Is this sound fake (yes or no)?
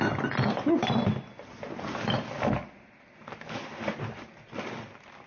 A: no